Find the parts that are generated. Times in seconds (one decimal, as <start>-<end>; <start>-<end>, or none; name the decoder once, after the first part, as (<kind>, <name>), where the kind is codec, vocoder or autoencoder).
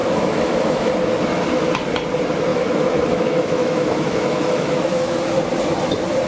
0.0-0.9 (autoencoder, DAC-VAE); 2.5-5.2